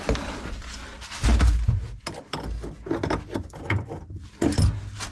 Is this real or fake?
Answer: real